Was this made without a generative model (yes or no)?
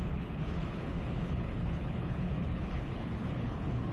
no